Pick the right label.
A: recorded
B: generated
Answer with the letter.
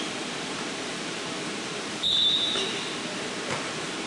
B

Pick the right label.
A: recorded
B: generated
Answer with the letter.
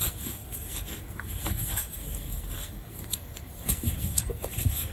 B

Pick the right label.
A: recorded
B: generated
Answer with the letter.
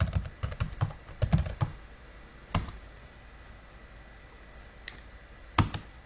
A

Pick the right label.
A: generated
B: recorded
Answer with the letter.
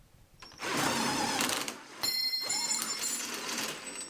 A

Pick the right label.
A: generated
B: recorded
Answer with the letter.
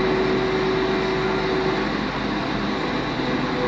B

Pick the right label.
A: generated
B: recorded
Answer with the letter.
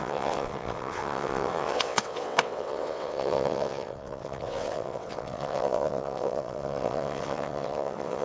A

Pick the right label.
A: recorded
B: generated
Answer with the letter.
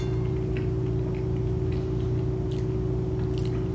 A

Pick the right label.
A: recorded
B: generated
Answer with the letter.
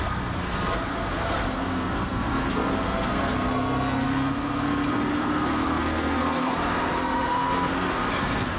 B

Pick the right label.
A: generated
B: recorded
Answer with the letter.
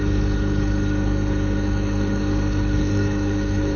A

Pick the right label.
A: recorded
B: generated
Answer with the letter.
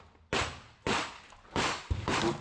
A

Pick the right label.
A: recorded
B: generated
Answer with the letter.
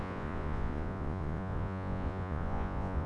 B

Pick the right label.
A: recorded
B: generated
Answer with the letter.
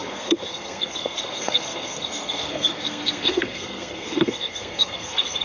B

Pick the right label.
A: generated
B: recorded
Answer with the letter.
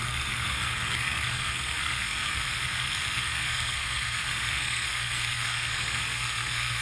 A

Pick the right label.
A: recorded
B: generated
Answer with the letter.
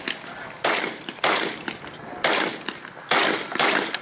B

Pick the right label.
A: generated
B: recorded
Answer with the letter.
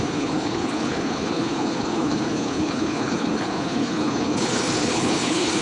A